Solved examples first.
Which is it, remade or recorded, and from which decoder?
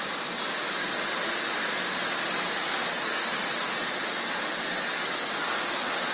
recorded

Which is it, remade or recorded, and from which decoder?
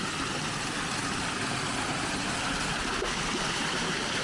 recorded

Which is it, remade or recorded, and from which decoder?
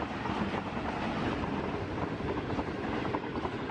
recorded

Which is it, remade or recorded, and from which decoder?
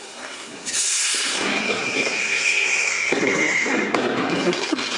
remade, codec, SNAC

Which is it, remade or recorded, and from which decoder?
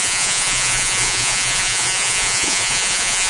remade, vocoder, Vocos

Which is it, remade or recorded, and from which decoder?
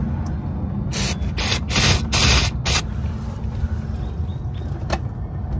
recorded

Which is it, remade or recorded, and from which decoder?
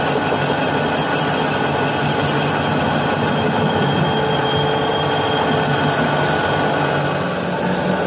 recorded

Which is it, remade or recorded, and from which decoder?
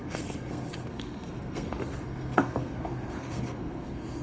remade, codec, SNAC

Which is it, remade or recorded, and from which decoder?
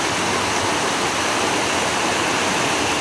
recorded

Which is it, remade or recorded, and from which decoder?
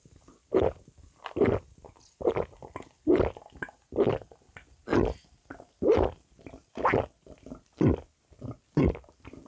recorded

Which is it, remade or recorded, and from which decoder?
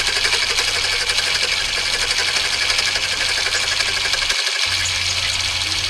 recorded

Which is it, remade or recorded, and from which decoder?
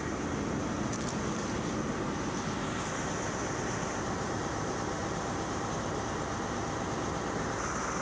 recorded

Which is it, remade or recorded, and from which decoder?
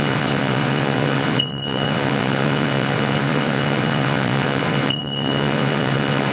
remade, vocoder, WaveNeXt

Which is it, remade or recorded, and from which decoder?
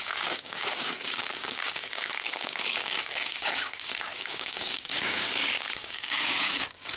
remade, codec, DAC